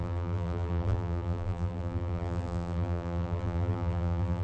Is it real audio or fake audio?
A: fake